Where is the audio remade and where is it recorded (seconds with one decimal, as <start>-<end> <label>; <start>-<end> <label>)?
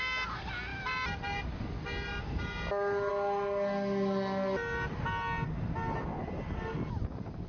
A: 0.0-7.5 recorded